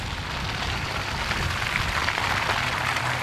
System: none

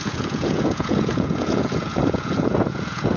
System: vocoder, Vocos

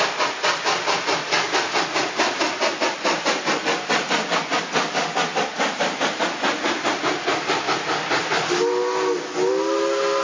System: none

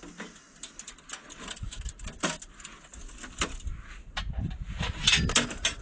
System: none